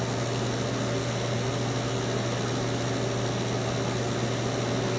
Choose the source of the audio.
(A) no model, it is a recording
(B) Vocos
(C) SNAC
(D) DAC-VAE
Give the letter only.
A